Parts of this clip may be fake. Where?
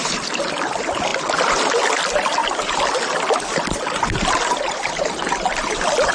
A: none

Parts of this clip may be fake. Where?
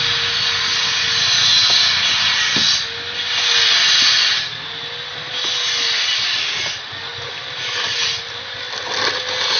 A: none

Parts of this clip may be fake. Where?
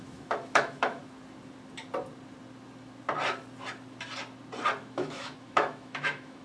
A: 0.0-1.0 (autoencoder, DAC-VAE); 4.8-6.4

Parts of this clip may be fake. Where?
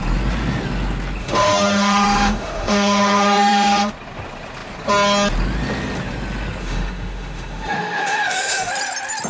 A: 1.2-3.9 (autoencoder, DAC-VAE); 6.6-8.7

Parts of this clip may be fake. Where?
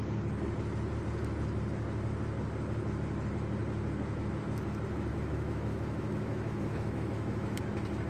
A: 5.1-7.6 (autoencoder, DAC-VAE)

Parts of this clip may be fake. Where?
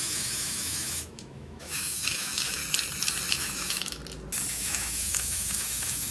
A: 0.0-2.6 (autoencoder, DAC-VAE); 3.3-4.0; 4.5-6.1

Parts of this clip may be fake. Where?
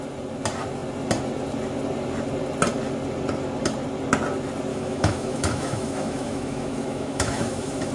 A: 4.7-7.9 (autoencoder, DAC-VAE)